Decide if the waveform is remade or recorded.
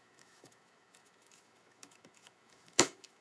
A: remade